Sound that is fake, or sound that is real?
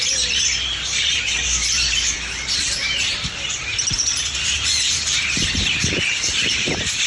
fake